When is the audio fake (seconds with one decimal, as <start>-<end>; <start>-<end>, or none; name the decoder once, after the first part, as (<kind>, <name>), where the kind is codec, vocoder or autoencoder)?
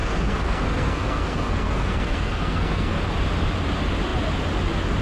0.0-3.0 (codec, SNAC)